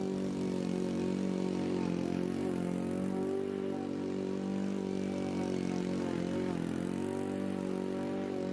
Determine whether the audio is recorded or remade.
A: recorded